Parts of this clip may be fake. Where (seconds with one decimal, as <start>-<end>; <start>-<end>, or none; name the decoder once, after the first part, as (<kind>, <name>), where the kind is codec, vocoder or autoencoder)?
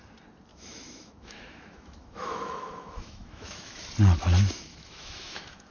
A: 0.5-3.9 (autoencoder, DAC-VAE); 4.7-5.7